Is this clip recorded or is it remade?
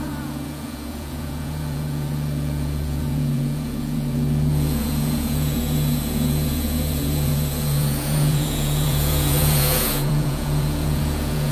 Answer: remade